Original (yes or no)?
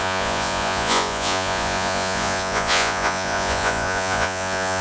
no